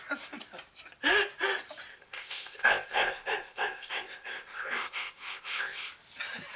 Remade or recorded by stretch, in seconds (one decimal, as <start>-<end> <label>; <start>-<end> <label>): 0.0-1.9 recorded; 1.9-5.9 remade; 5.9-6.6 recorded